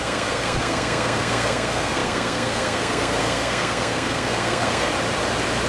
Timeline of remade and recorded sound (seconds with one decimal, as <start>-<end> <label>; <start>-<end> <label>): 0.0-4.9 remade; 4.9-5.7 recorded